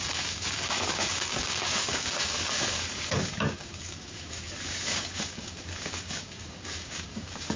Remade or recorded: remade